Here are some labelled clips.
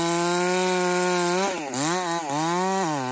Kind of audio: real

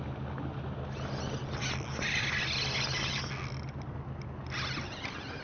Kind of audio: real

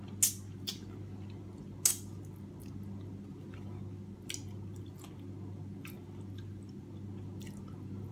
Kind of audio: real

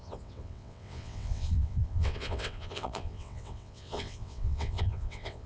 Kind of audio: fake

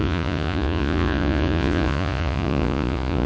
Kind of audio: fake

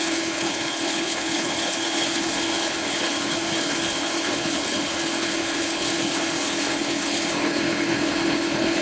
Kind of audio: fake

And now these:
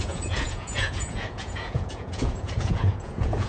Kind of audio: fake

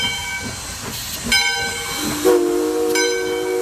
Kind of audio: real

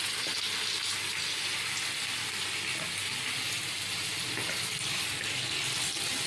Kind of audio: real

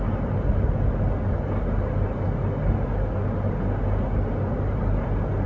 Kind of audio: real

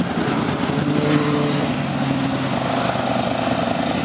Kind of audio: real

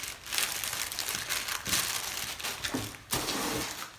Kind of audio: real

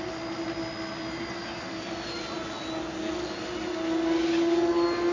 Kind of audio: real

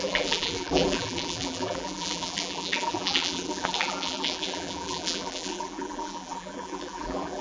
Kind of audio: fake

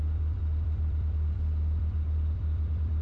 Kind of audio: fake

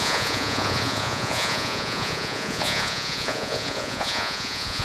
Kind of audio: fake